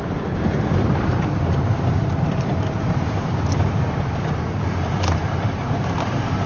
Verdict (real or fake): fake